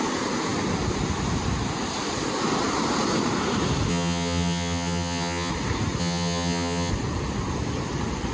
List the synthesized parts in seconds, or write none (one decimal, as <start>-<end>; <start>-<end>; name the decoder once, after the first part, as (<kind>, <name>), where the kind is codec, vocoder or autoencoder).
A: 3.9-5.5 (vocoder, HiFi-GAN); 6.0-6.9